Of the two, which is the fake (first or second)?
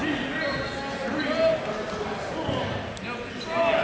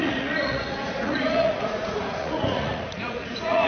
second